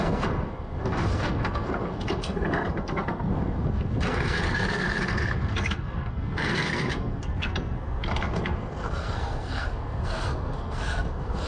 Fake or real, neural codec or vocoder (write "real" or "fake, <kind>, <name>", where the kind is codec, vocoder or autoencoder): fake, codec, SNAC